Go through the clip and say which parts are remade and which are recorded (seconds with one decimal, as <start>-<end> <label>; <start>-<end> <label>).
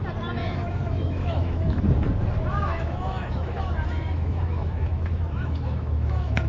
0.0-0.4 recorded; 0.4-1.8 remade; 1.8-2.5 recorded; 2.5-6.5 remade